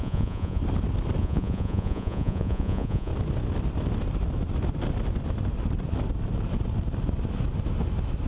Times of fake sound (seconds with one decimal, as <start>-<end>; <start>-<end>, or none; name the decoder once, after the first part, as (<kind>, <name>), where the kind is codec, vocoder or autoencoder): 0.0-0.6 (vocoder, Vocos); 1.2-3.1